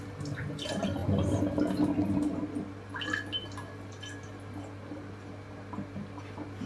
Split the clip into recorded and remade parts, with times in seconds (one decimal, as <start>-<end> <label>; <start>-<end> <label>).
0.0-6.7 recorded